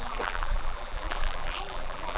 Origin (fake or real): fake